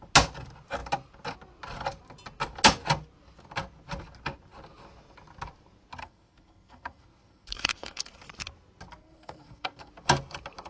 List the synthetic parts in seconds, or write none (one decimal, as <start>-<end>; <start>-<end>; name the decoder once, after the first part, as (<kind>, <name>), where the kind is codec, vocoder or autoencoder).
6.0-8.2 (codec, SNAC); 9.0-9.9